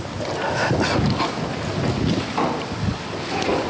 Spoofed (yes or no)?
no